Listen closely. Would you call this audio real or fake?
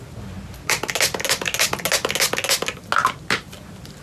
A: real